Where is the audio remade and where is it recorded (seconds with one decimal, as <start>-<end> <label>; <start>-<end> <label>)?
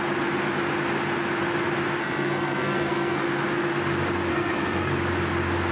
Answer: 0.0-2.0 recorded; 2.0-3.3 remade; 3.3-4.3 recorded; 4.3-4.9 remade; 4.9-5.7 recorded